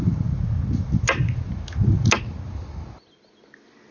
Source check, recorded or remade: recorded